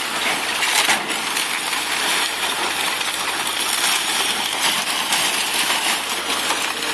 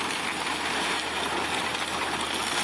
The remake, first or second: first